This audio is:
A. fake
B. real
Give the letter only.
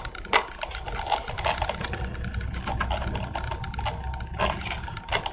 B